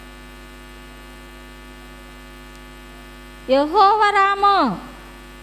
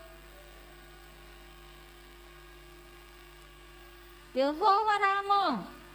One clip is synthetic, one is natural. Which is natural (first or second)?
first